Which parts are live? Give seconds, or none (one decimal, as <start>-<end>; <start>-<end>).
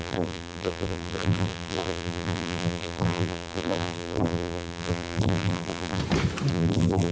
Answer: 6.0-6.5